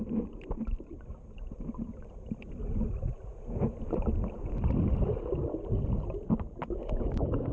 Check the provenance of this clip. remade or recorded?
recorded